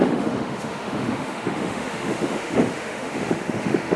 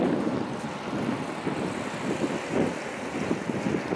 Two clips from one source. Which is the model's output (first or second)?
first